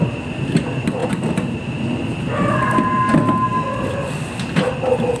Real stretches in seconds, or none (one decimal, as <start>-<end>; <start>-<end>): 0.0-5.2